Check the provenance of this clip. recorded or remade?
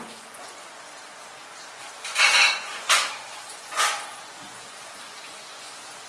remade